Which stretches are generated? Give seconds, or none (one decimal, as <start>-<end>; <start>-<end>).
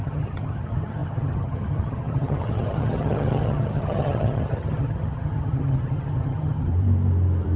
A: 0.0-6.7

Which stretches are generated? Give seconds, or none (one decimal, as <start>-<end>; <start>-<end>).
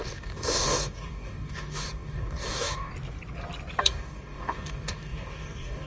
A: 0.0-2.9; 3.8-5.9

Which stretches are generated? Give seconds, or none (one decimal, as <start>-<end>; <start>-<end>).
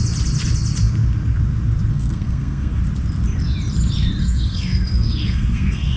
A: 1.9-2.8; 4.2-6.0